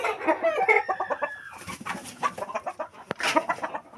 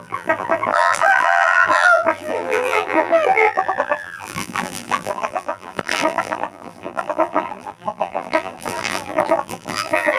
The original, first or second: first